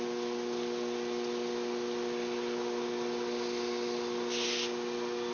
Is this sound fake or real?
real